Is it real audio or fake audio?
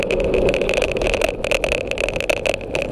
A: real